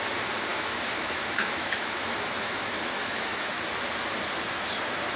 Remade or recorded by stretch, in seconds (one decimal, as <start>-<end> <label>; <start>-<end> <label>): 0.0-0.5 recorded; 0.5-3.6 remade; 3.6-5.2 recorded